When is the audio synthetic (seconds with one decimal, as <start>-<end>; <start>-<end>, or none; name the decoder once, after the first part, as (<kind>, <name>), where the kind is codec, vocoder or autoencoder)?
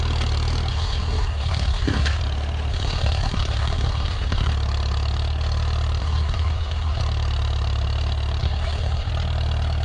0.7-2.2 (codec, SNAC); 2.7-4.5; 6.0-7.0; 8.4-9.1